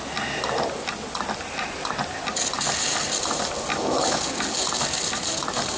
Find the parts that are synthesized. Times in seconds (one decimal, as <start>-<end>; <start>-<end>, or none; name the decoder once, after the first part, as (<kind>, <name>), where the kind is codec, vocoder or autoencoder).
3.7-4.2 (autoencoder, DAC-VAE)